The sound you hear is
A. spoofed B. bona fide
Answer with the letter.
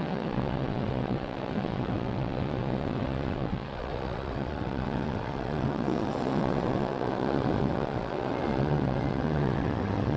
A